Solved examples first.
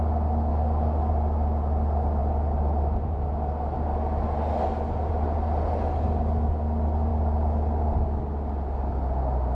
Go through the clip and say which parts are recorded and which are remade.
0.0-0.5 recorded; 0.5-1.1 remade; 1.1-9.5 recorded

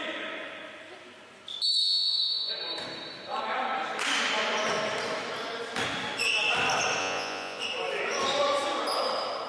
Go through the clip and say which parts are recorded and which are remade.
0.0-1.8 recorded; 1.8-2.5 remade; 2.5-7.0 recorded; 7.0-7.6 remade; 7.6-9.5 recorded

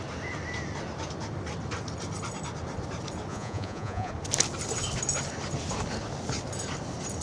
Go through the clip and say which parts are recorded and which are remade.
0.0-3.3 recorded; 3.3-4.1 remade; 4.1-7.2 recorded

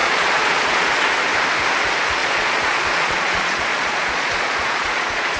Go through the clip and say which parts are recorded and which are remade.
0.0-0.9 remade; 0.9-2.2 recorded; 2.2-5.4 remade